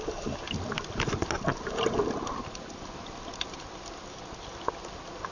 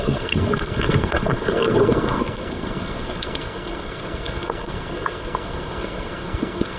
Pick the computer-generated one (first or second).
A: second